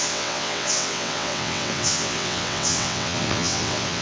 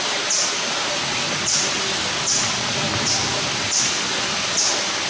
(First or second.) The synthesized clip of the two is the first